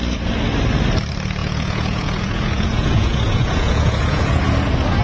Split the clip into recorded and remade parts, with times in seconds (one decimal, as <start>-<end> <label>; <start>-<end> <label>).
0.0-1.4 recorded; 1.4-4.4 remade; 4.4-5.0 recorded